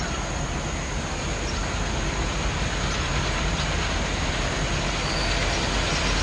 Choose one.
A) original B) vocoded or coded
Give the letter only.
A